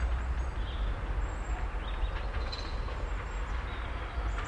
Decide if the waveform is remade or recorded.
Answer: recorded